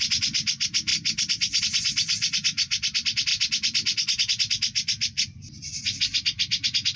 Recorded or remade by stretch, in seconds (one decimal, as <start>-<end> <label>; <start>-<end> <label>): 0.0-3.3 remade; 3.3-7.0 recorded